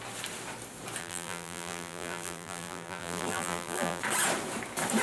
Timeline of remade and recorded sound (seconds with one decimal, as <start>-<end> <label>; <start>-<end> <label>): 0.0-1.0 recorded; 1.0-4.0 remade; 4.0-5.0 recorded

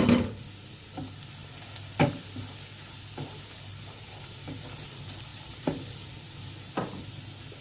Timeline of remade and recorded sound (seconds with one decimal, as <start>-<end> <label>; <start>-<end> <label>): 0.0-7.6 recorded

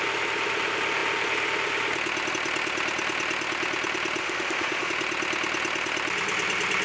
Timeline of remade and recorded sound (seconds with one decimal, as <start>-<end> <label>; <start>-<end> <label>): 0.0-4.2 recorded; 4.2-4.9 remade; 4.9-6.8 recorded

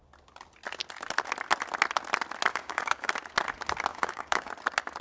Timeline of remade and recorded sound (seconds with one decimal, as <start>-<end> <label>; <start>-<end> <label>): 0.0-2.5 recorded; 2.5-3.1 remade; 3.1-3.9 recorded; 3.9-4.5 remade; 4.5-5.0 recorded